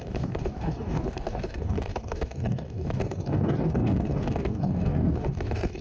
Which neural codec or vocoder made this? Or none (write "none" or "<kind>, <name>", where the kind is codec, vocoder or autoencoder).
codec, DAC